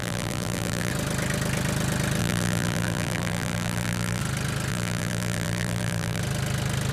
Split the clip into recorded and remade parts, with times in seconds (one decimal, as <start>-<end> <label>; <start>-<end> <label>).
0.0-0.9 remade; 0.9-2.2 recorded; 2.2-4.2 remade; 4.2-4.7 recorded; 4.7-6.2 remade; 6.2-6.9 recorded